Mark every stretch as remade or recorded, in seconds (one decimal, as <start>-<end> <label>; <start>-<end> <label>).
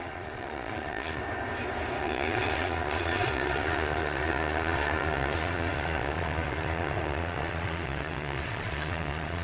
0.0-1.2 remade; 1.2-2.0 recorded; 2.0-9.4 remade